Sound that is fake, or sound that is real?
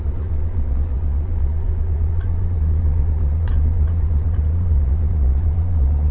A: fake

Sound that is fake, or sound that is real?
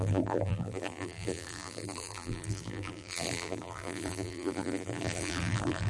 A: fake